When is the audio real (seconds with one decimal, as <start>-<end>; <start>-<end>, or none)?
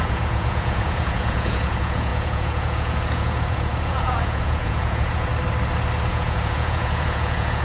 5.3-6.1